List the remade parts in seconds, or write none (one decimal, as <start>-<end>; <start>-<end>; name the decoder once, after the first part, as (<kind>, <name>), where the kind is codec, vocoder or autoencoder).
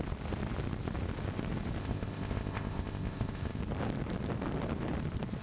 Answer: 1.8-3.6 (codec, ZipCodec)